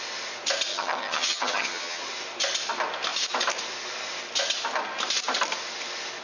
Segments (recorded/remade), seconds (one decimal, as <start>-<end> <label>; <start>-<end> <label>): 0.0-0.7 recorded; 0.7-2.0 remade; 2.0-6.2 recorded